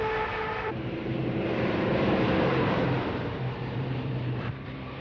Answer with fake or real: fake